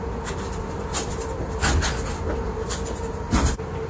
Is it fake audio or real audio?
real